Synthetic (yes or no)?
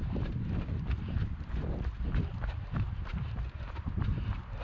no